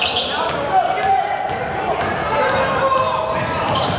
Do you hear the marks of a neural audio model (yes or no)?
no